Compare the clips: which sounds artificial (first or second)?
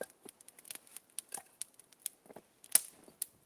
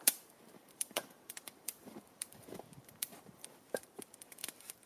second